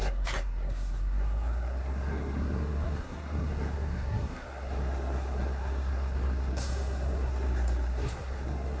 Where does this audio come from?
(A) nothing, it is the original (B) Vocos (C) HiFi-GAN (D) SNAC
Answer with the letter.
D